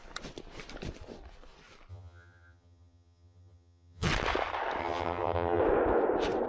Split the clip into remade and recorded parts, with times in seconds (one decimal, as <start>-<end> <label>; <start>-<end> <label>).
0.0-1.9 recorded; 1.9-4.1 remade; 4.1-4.8 recorded; 4.8-5.6 remade; 5.6-6.5 recorded